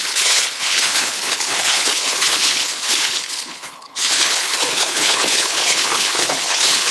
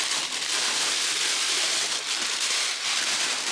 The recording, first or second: second